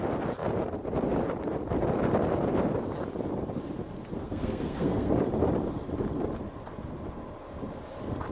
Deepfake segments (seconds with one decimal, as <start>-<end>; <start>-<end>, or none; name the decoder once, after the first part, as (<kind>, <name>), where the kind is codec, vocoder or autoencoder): 4.2-5.1 (codec, SNAC)